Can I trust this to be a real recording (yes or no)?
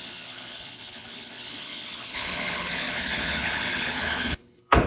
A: no